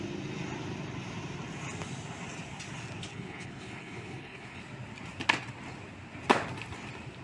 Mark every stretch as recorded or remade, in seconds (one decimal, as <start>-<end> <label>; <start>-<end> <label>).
0.0-3.1 recorded; 3.1-4.6 remade; 4.6-7.2 recorded